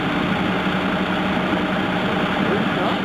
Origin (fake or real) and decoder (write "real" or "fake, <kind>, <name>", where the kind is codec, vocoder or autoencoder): real